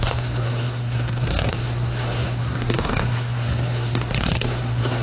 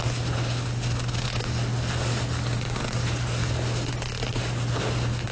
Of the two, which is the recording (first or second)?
second